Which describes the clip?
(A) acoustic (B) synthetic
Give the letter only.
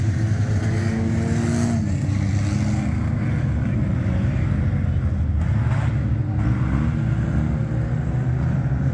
A